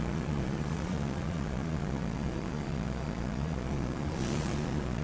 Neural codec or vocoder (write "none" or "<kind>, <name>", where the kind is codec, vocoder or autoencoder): vocoder, Vocos